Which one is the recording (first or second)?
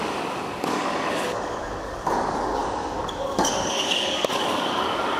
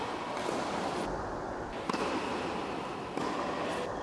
second